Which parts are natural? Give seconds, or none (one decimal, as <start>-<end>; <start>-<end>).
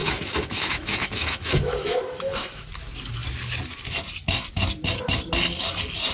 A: 2.7-6.1